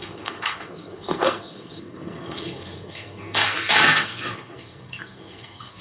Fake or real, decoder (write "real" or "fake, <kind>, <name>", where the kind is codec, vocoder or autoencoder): fake, codec, SNAC